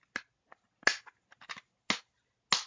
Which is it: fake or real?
real